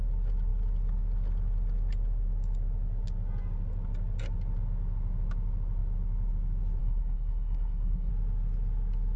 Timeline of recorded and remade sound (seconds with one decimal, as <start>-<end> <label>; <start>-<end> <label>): 0.0-6.8 recorded; 6.8-8.1 remade; 8.1-9.2 recorded